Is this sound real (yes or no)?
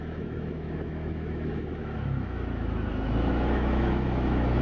no